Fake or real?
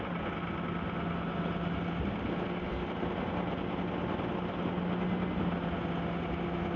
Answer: real